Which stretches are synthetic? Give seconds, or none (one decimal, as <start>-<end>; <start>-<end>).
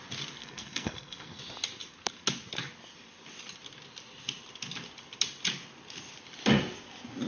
0.4-1.4